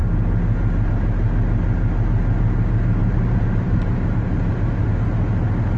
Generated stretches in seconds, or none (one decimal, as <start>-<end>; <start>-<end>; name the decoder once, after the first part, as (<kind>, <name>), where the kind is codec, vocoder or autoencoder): 3.0-4.9 (vocoder, BigVGAN v2)